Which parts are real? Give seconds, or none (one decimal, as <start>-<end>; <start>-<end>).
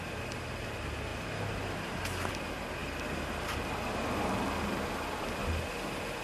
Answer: 0.0-6.2